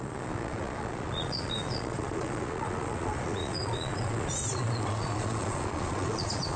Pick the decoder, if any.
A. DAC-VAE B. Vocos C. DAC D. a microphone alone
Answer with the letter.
B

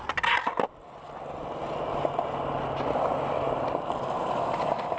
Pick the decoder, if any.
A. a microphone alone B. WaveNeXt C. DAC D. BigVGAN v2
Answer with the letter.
A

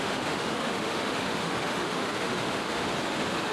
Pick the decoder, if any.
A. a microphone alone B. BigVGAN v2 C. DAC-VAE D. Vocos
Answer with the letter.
C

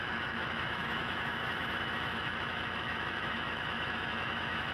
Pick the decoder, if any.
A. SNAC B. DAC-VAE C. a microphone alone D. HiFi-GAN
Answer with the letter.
B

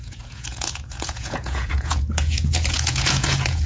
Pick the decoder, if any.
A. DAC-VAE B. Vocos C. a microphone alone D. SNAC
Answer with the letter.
B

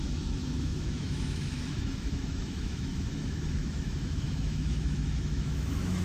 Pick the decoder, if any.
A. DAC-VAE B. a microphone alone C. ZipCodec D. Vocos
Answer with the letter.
A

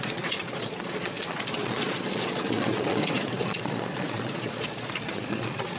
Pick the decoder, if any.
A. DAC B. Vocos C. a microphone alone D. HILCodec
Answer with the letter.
B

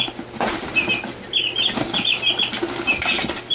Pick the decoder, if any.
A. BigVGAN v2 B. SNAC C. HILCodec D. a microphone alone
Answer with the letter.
D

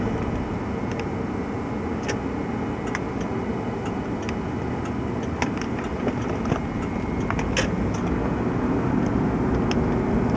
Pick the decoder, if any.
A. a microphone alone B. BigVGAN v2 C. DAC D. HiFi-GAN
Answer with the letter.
A